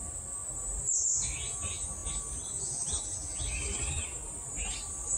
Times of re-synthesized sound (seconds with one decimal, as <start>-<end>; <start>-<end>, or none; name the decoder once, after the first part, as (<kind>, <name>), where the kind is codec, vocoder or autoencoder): none